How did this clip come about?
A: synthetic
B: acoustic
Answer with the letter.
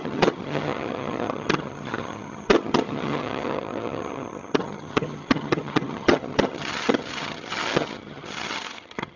A